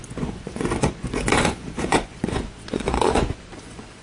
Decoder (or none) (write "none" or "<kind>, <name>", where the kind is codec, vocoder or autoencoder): vocoder, Vocos